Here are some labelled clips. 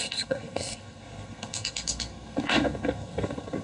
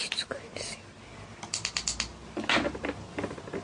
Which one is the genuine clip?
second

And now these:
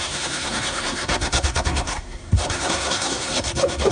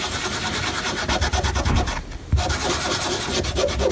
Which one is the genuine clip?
second